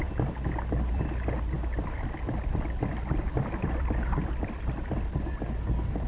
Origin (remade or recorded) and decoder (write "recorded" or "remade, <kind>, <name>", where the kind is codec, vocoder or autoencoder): recorded